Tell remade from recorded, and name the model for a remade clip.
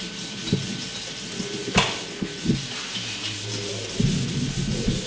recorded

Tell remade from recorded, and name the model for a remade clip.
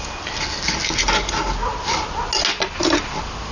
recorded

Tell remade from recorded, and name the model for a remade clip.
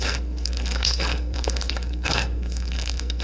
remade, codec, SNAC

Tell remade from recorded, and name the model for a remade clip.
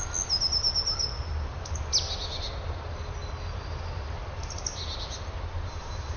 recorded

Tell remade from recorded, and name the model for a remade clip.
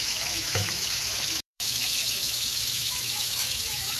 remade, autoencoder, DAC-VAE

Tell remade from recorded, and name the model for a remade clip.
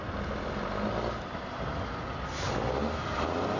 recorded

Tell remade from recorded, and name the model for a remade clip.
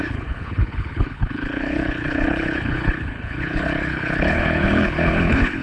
remade, codec, HILCodec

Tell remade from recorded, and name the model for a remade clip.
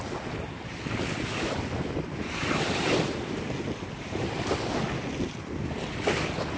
recorded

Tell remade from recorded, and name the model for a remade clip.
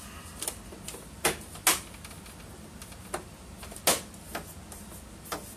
recorded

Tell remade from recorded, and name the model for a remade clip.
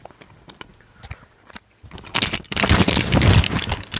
recorded